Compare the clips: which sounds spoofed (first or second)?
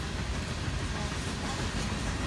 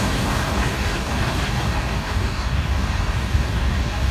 second